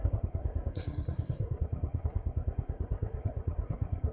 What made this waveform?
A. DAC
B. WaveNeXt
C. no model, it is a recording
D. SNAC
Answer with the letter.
D